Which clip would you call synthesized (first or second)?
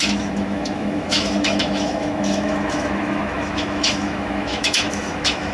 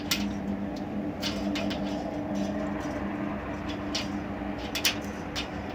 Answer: first